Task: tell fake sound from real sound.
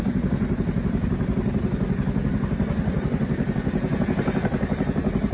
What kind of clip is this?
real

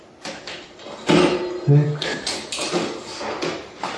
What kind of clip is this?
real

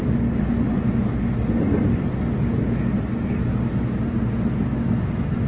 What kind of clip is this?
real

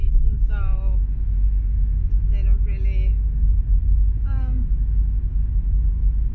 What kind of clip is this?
real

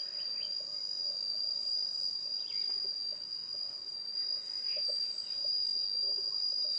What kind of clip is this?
real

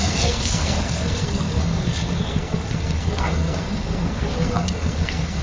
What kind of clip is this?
fake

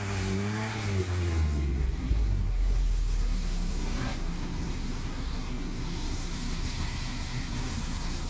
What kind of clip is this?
fake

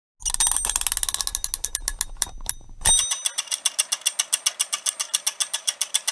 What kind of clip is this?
real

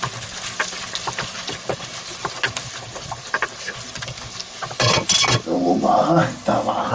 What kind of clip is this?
real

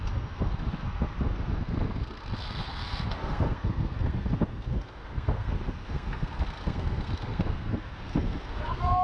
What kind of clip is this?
fake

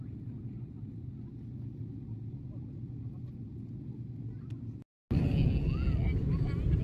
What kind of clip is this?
real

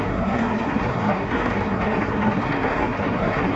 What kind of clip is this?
fake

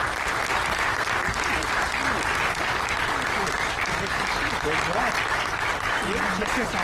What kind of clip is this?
real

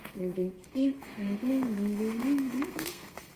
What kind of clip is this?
fake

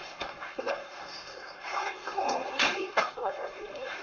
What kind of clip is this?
fake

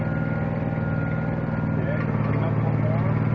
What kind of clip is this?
real